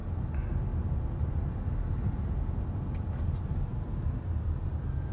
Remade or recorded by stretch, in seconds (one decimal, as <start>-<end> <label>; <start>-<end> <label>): 0.0-5.1 recorded